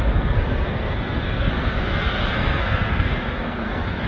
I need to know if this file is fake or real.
fake